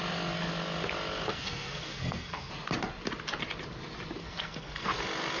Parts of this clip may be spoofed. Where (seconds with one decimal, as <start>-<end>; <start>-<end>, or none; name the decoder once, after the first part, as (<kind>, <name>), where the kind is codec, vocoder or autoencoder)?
1.3-2.5 (codec, SNAC); 4.2-4.9